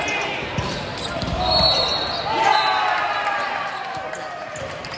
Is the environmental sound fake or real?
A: real